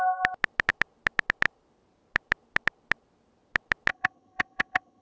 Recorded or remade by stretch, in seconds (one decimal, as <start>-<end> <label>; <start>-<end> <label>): 0.0-3.9 recorded; 3.9-5.0 remade